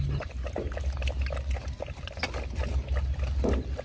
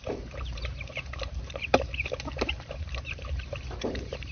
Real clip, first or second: first